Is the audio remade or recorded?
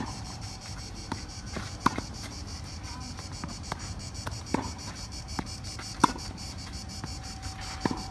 remade